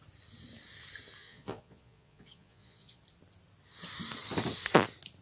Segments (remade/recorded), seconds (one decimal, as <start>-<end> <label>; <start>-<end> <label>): 0.0-1.2 recorded; 1.2-3.0 remade; 3.0-5.2 recorded